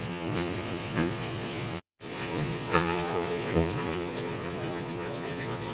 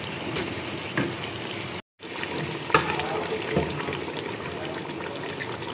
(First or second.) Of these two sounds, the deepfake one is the first